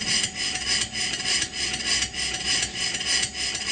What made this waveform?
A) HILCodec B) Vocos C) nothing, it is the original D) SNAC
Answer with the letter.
C